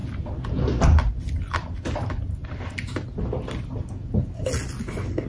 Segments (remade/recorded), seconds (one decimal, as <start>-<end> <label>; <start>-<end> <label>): 0.0-5.3 recorded